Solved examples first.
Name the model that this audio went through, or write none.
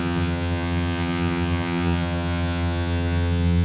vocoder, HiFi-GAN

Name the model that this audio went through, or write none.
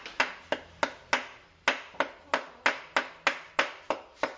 none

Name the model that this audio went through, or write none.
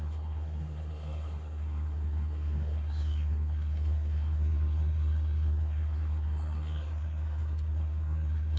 codec, SNAC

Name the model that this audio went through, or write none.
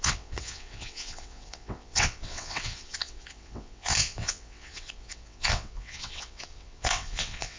vocoder, WaveNeXt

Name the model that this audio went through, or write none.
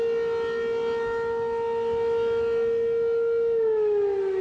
none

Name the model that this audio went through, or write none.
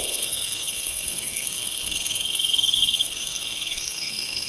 codec, SNAC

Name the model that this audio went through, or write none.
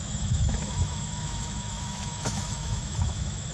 autoencoder, DAC-VAE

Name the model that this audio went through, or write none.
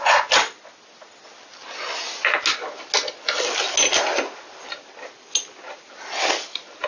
none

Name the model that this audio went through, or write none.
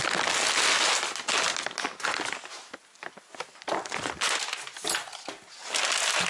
none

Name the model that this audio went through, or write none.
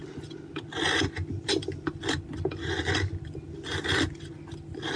none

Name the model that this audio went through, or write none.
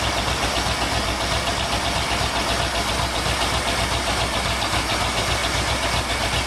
none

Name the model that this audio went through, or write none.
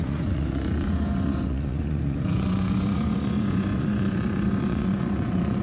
vocoder, Vocos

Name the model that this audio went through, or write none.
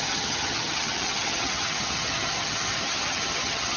vocoder, HiFi-GAN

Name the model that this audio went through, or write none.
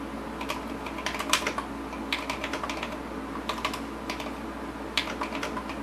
none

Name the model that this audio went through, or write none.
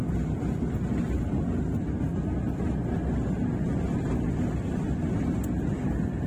none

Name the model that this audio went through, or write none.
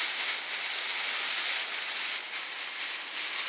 none